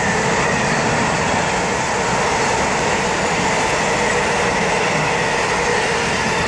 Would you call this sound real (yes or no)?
yes